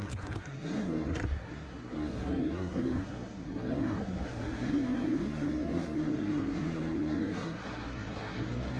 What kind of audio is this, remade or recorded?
remade